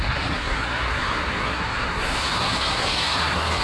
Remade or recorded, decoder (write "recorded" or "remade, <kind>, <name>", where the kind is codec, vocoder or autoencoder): remade, codec, SNAC